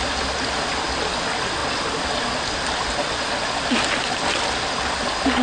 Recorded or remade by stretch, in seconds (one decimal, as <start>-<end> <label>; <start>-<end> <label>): 0.0-5.4 recorded